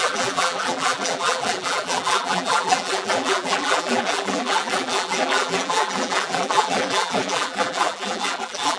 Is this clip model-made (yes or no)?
yes